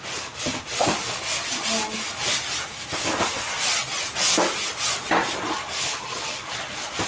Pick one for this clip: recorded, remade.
recorded